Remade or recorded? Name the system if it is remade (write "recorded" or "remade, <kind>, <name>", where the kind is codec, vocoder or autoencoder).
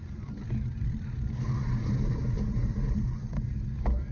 recorded